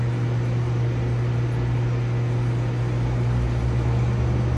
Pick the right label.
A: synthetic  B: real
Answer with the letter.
B